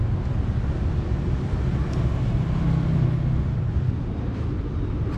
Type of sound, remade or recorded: recorded